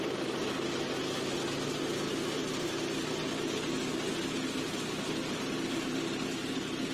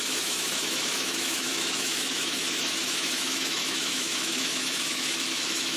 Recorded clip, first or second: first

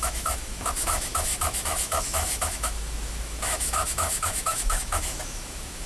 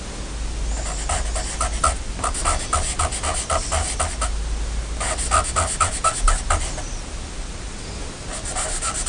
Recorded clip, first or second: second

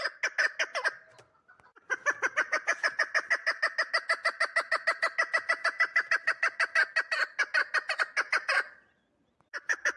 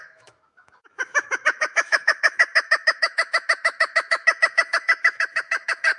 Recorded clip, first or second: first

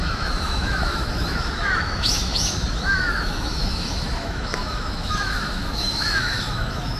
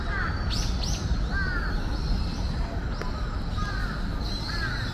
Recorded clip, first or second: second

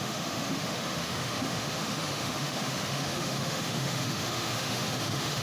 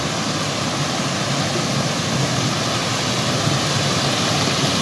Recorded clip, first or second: second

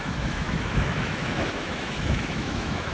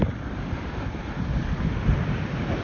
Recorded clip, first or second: second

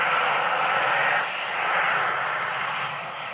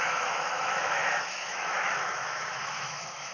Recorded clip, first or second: first